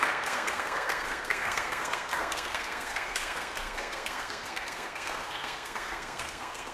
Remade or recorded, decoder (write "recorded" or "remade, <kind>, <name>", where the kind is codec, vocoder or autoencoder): remade, codec, SNAC